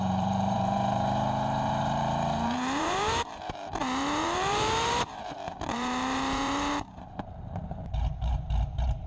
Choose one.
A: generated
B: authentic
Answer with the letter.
A